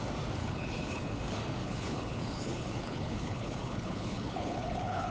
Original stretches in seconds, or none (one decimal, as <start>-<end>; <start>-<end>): 0.0-0.4; 1.2-1.6